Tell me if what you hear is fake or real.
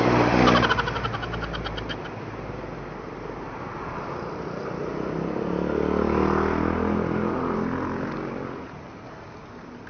real